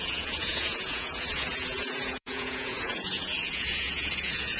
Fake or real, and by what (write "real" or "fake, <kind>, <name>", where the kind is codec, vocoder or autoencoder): fake, vocoder, Vocos